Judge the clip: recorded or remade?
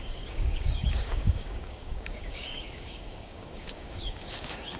remade